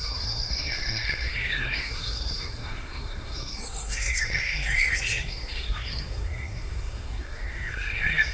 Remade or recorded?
remade